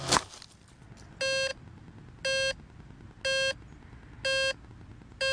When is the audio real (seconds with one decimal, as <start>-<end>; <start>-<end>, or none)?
0.0-5.3